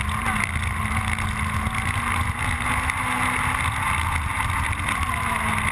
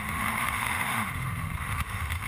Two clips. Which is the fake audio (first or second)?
second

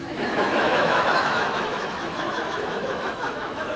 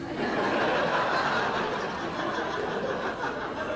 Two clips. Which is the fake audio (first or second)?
first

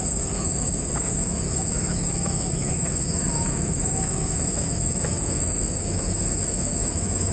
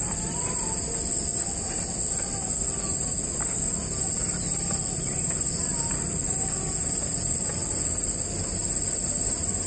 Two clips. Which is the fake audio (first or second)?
first